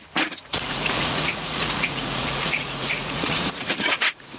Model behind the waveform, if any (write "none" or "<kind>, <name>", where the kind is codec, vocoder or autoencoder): vocoder, Vocos